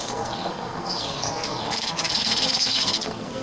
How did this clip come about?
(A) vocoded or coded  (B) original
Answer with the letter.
A